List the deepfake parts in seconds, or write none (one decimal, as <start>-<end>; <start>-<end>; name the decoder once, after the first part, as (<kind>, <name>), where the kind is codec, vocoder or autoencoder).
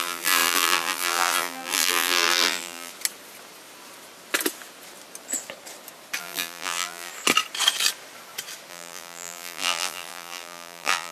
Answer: 0.0-2.9 (vocoder, BigVGAN v2); 6.2-7.1; 8.7-11.1